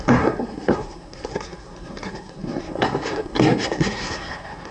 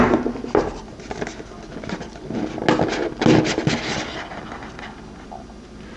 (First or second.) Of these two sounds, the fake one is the first